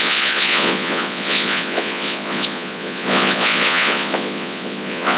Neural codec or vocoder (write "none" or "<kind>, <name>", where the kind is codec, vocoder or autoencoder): vocoder, Vocos